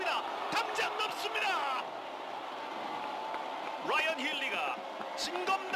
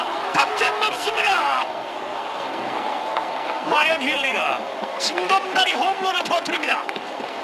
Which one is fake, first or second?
second